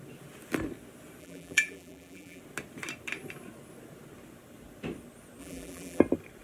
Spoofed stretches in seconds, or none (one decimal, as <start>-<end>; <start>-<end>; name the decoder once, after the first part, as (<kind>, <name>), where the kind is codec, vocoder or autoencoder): 1.2-2.4 (vocoder, BigVGAN v2); 5.4-6.0